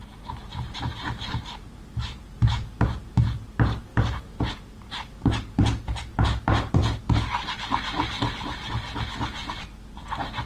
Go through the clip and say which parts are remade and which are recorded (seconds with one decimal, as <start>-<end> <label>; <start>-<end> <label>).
0.0-6.8 remade; 6.8-10.5 recorded